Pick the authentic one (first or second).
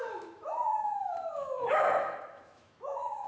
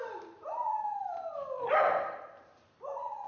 second